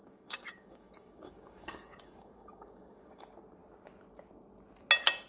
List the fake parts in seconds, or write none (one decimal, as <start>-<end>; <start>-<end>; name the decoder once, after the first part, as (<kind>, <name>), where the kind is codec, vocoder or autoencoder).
0.0-3.2 (codec, DAC)